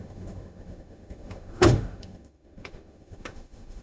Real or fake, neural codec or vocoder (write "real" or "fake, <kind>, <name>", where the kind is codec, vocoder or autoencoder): fake, autoencoder, DAC-VAE